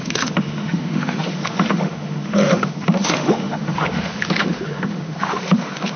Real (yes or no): no